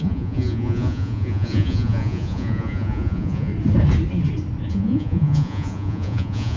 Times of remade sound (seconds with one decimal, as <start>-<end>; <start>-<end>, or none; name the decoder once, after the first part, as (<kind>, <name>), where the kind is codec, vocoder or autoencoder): 0.0-3.5 (vocoder, Vocos); 4.7-6.6